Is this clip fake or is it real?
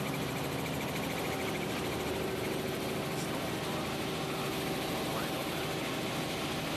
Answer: real